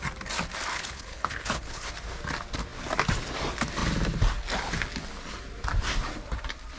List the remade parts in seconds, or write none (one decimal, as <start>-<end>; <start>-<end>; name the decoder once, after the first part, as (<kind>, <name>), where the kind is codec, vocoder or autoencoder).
0.7-1.9 (codec, HILCodec)

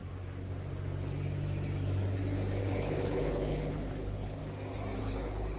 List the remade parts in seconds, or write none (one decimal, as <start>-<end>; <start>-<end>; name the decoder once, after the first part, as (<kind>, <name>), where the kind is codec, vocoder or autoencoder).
2.6-4.4 (codec, HILCodec); 5.0-5.6

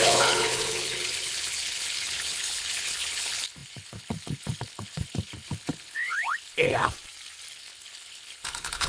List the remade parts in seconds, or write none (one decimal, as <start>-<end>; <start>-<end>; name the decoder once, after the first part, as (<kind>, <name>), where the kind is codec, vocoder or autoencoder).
0.0-6.8 (codec, HILCodec); 7.5-8.9

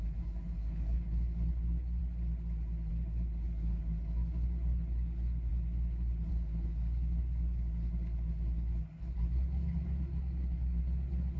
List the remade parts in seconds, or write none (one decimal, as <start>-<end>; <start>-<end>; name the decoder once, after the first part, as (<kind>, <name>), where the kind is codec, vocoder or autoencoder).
0.0-2.0 (codec, HILCodec); 2.9-11.4

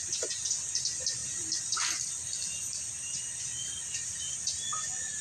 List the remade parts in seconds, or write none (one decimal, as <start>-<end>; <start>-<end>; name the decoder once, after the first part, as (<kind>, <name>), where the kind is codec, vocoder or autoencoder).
none